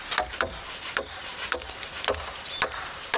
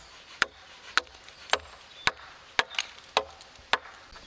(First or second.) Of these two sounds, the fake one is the first